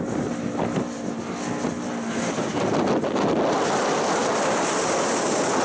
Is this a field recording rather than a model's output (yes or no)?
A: yes